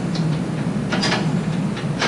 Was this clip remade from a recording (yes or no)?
no